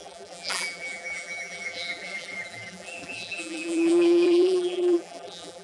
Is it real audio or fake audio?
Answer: fake